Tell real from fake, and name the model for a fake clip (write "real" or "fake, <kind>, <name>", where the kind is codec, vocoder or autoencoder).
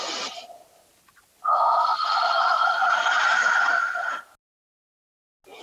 real